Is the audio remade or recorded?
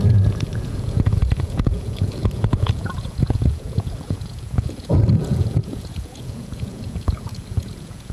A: remade